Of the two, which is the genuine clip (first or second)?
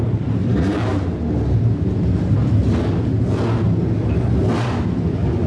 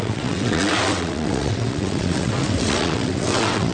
first